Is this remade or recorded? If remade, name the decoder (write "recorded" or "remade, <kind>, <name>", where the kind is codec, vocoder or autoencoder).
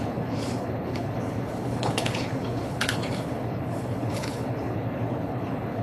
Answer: remade, codec, HILCodec